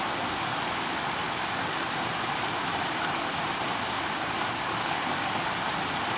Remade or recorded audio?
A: recorded